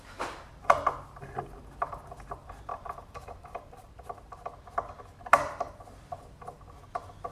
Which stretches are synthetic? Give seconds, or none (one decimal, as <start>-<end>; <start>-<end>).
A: 2.7-3.9